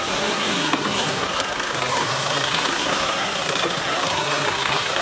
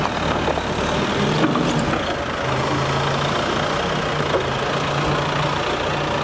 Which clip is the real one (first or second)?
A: second